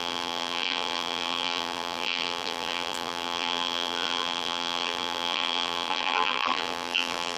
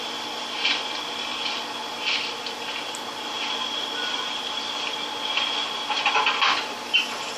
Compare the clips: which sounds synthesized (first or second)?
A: first